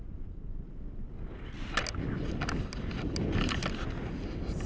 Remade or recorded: recorded